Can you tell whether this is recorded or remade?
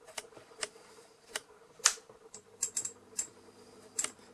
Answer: remade